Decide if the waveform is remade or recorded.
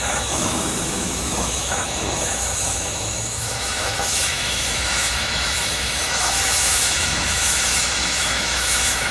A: remade